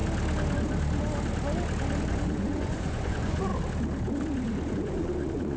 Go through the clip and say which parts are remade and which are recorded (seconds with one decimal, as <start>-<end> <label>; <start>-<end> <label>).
0.0-2.0 recorded; 2.0-3.5 remade; 3.5-4.7 recorded; 4.7-5.6 remade